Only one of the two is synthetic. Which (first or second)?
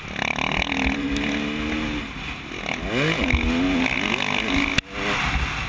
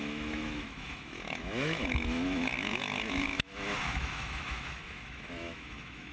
second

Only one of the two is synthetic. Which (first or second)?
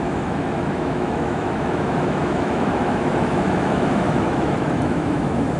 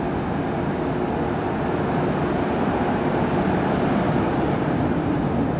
first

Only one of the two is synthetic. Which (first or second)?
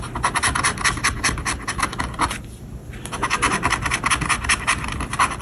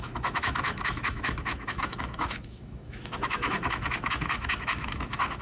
second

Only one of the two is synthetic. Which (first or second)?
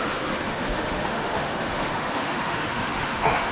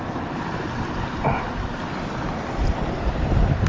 first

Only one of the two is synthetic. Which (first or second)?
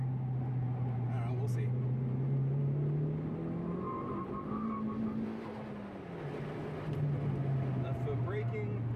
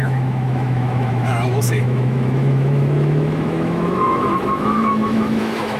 second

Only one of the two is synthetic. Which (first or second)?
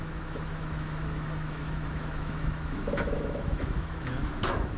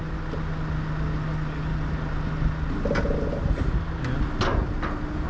first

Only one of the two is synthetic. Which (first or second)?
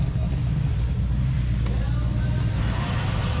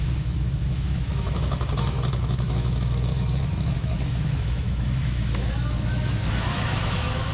second